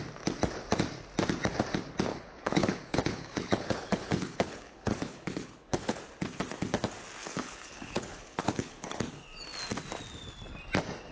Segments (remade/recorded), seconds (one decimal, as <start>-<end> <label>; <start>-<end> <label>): 0.0-2.1 recorded; 2.1-6.0 remade; 6.0-7.2 recorded; 7.2-9.0 remade; 9.0-11.1 recorded